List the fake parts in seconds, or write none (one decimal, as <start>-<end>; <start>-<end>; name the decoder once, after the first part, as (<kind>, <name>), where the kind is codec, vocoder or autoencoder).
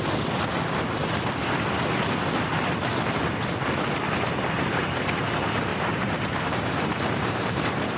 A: 5.7-8.0 (vocoder, BigVGAN v2)